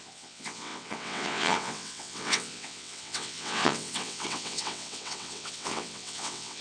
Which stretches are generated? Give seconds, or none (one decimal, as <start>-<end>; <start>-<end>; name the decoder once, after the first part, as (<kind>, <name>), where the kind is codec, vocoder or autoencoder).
0.0-6.6 (vocoder, WaveNeXt)